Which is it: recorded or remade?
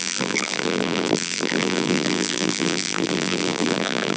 remade